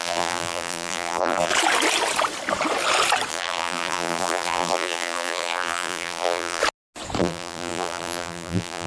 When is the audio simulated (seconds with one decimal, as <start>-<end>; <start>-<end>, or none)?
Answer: 0.0-1.5; 3.3-6.6; 7.2-8.9